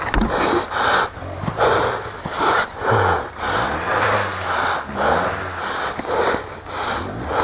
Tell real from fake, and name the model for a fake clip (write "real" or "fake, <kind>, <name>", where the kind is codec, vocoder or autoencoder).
real